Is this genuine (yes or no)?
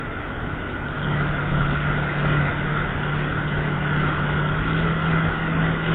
no